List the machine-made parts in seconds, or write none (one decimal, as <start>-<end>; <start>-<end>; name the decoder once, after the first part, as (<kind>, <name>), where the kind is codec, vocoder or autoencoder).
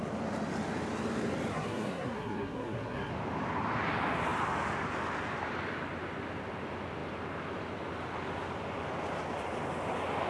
1.5-3.1 (codec, SNAC)